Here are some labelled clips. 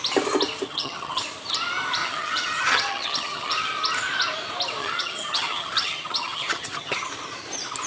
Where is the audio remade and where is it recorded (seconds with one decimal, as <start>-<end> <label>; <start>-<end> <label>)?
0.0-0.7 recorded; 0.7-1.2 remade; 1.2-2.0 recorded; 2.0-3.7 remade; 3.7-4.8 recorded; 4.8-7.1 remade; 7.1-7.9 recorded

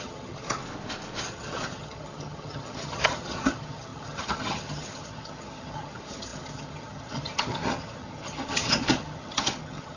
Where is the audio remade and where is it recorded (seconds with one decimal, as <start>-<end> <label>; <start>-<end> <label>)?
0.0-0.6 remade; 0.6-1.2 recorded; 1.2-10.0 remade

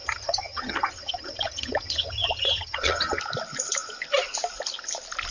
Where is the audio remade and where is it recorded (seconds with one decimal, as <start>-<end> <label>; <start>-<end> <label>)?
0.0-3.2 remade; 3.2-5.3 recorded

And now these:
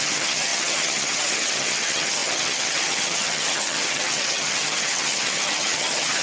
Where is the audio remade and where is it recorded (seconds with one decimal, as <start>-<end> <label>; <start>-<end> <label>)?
0.0-6.2 remade

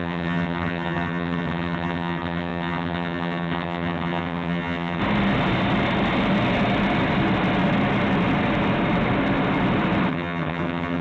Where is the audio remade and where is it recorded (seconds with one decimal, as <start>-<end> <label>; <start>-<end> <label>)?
0.0-5.0 remade; 5.0-10.1 recorded; 10.1-11.0 remade

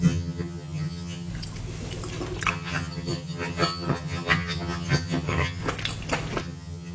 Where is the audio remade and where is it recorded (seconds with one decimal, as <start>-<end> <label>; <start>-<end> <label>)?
0.0-1.3 remade; 1.3-2.5 recorded; 2.5-5.6 remade; 5.6-6.4 recorded; 6.4-6.9 remade

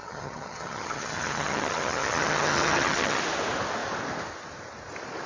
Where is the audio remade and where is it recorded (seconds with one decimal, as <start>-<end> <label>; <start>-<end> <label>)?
0.0-3.2 remade; 3.2-5.3 recorded

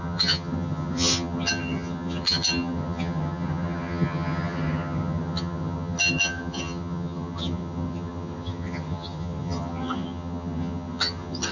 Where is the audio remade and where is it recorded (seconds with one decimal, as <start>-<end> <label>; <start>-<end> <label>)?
0.0-11.5 remade